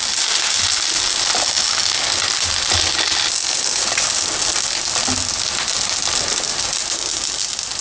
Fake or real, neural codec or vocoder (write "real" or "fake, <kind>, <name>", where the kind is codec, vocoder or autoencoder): real